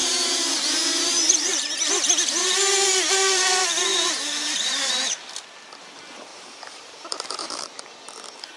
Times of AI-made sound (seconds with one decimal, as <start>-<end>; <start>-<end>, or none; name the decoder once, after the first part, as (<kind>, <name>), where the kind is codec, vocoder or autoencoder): 0.0-1.9 (vocoder, BigVGAN v2); 3.9-4.9; 6.3-7.8